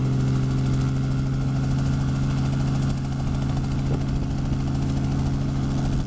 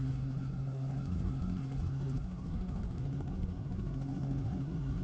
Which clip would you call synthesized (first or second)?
second